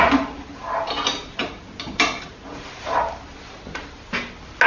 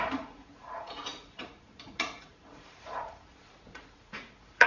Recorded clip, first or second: first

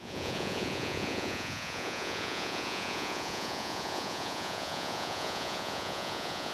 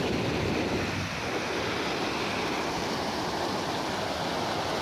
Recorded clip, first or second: second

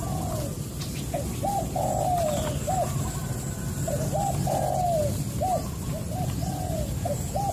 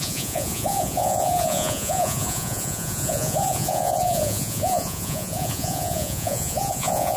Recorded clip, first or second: first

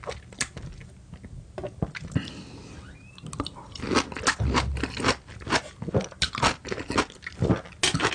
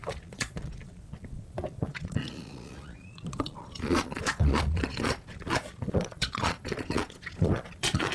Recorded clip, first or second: first